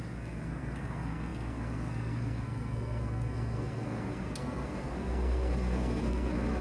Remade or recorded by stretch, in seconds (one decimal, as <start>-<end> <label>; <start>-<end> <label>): 0.0-6.6 remade